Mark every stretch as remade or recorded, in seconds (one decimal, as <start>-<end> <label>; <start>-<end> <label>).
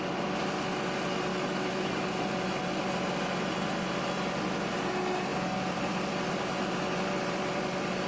0.0-1.3 recorded; 1.3-1.9 remade; 1.9-8.1 recorded